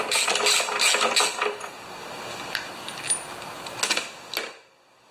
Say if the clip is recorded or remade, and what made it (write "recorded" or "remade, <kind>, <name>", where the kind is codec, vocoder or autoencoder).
recorded